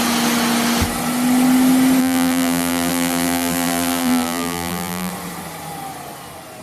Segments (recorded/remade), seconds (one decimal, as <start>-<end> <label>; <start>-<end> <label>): 0.0-2.0 recorded; 2.0-5.1 remade; 5.1-6.6 recorded